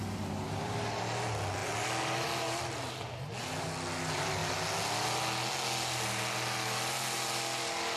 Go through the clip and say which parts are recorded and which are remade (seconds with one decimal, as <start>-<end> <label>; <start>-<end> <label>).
0.0-8.0 recorded